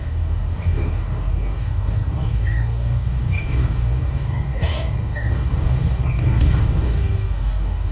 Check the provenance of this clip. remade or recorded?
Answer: remade